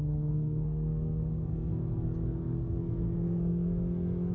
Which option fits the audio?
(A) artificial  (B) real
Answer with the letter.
A